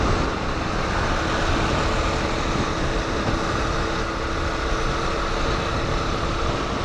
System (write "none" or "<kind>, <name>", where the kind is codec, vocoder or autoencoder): none